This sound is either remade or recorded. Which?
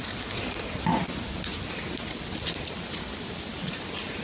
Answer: recorded